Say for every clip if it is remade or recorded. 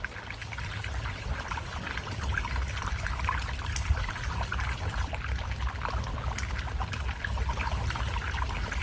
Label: recorded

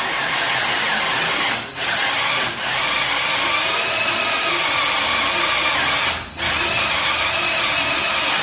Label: recorded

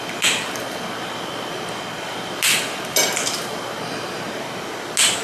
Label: recorded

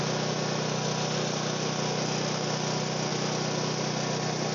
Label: recorded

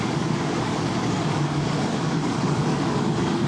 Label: remade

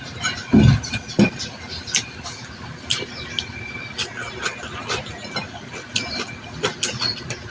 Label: recorded